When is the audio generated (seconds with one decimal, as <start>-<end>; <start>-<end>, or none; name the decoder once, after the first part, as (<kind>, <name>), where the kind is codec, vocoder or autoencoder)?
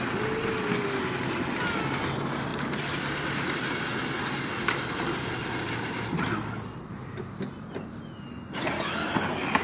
none